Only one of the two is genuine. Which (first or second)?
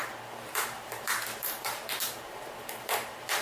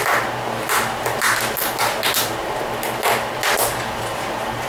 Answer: second